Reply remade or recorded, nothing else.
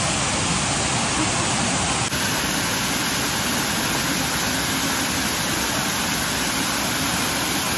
recorded